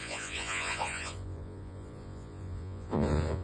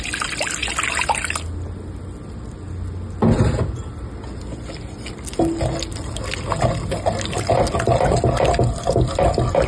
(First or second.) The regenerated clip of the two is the first